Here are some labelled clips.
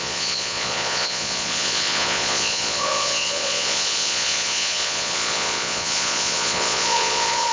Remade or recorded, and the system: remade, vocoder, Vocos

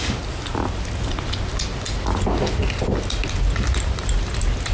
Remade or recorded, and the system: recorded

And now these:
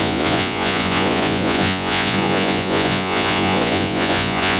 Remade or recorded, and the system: remade, vocoder, Vocos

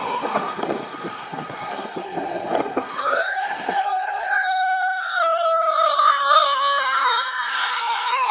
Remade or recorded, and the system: remade, codec, SNAC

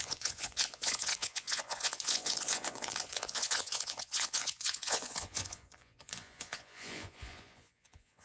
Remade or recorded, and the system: remade, vocoder, Vocos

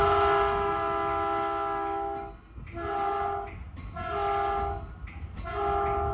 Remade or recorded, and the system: recorded